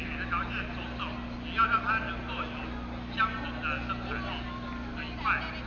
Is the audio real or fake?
real